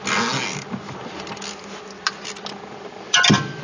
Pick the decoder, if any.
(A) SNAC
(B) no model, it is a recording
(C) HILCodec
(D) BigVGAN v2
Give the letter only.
B